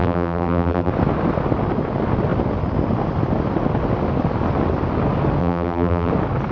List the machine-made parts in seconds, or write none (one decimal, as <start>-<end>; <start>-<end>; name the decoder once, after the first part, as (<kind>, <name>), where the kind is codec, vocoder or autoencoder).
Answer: 0.0-0.9 (vocoder, BigVGAN v2); 5.4-6.1